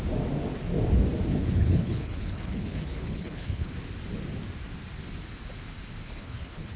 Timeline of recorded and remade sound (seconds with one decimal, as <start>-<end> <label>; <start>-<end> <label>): 0.0-1.3 recorded; 1.3-3.7 remade; 3.7-6.0 recorded; 6.0-6.8 remade